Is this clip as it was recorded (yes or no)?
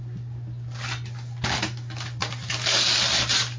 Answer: yes